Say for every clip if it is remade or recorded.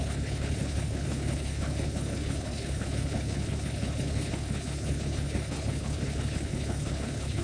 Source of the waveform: remade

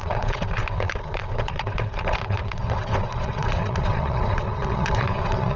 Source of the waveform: remade